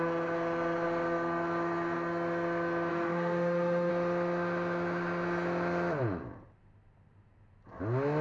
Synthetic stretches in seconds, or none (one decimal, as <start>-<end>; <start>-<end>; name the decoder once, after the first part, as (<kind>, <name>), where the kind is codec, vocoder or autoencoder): 2.9-3.9 (autoencoder, DAC-VAE)